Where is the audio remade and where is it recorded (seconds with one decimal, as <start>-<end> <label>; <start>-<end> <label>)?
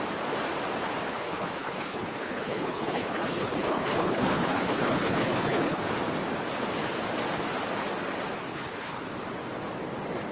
0.0-1.1 recorded; 1.1-5.8 remade; 5.8-8.5 recorded; 8.5-9.0 remade; 9.0-10.3 recorded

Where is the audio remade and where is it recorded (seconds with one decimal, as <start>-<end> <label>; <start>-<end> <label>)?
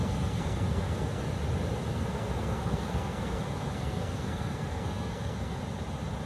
0.0-1.3 remade; 1.3-1.9 recorded; 1.9-5.6 remade; 5.6-6.3 recorded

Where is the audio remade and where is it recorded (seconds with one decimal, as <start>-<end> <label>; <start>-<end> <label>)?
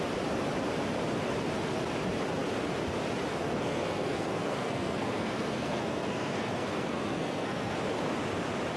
0.0-3.3 recorded; 3.3-7.8 remade; 7.8-8.8 recorded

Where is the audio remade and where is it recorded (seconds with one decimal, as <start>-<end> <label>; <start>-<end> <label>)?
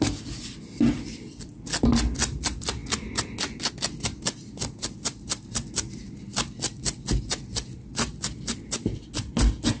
0.0-9.8 recorded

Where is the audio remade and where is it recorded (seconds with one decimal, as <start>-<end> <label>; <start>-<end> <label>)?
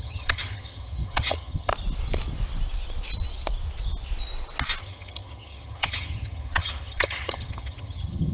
0.0-1.7 remade; 1.7-4.8 recorded; 4.8-8.3 remade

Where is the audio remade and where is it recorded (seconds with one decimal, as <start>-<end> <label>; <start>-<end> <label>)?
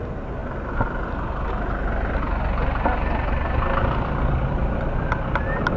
0.0-5.8 recorded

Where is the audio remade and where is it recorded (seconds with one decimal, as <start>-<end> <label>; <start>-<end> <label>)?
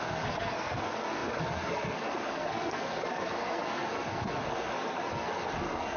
0.0-6.0 remade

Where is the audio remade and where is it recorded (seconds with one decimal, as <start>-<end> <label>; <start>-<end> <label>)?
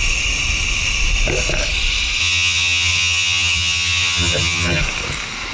0.0-2.2 recorded; 2.2-4.8 remade; 4.8-5.5 recorded